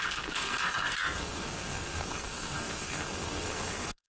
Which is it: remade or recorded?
remade